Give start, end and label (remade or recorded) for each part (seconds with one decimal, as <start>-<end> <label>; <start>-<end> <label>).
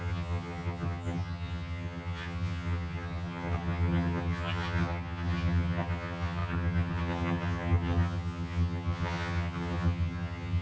0.0-10.6 remade